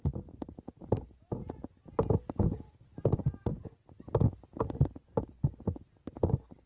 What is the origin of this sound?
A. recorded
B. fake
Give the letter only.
A